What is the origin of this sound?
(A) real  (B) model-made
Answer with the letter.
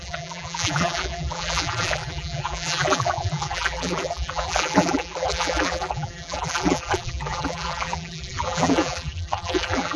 B